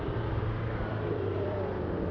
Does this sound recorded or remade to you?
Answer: remade